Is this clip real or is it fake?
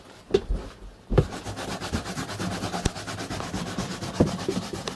real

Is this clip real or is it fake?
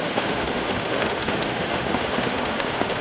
fake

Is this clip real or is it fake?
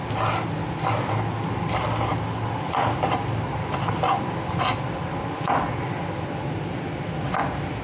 real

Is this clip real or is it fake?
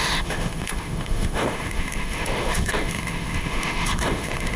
fake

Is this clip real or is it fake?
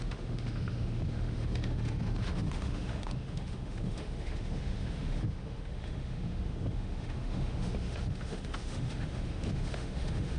fake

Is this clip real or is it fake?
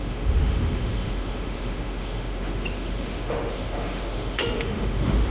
fake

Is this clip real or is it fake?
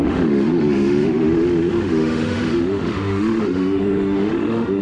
fake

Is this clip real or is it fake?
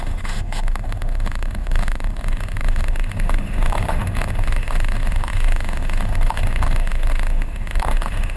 fake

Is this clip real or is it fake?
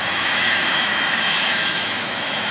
fake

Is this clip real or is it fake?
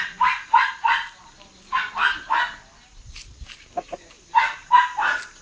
real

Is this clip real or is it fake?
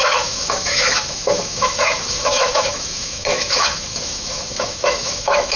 fake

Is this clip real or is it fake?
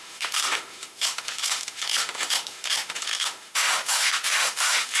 fake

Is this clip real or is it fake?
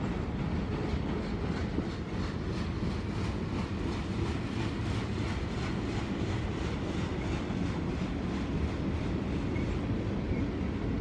real